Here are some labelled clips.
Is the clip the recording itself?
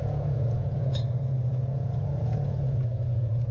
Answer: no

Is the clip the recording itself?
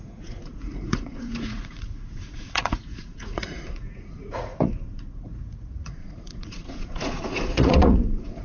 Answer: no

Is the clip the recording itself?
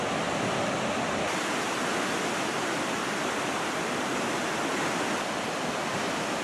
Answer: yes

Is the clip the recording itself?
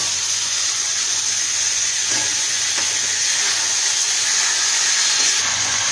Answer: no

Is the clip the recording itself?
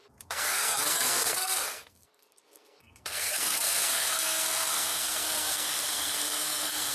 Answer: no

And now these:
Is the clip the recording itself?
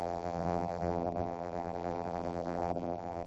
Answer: no